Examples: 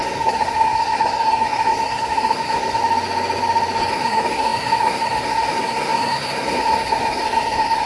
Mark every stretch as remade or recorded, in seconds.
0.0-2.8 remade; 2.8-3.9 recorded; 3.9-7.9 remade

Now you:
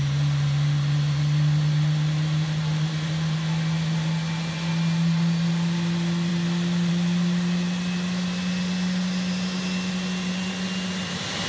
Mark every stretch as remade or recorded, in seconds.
0.0-11.5 recorded

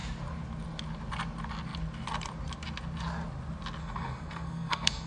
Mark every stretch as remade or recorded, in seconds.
0.0-3.8 recorded; 3.8-5.1 remade

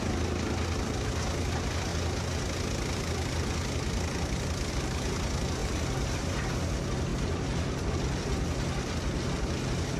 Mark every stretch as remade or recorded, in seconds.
0.0-5.6 recorded; 5.6-6.5 remade; 6.5-10.0 recorded

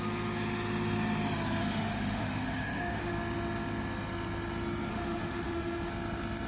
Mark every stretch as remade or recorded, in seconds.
0.0-1.6 recorded; 1.6-3.1 remade; 3.1-4.9 recorded; 4.9-5.9 remade; 5.9-6.5 recorded